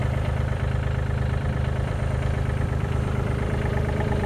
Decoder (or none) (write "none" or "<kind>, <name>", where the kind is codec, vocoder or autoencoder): vocoder, BigVGAN v2